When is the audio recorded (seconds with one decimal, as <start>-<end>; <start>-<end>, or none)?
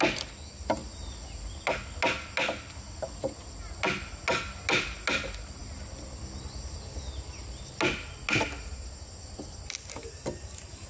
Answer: 0.0-10.9